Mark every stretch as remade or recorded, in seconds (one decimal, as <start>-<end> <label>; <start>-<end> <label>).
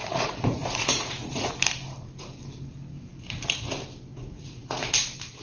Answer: 0.0-1.5 remade; 1.5-4.1 recorded; 4.1-4.9 remade; 4.9-5.4 recorded